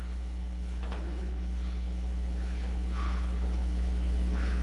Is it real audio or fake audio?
fake